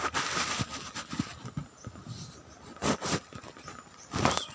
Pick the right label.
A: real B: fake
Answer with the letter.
A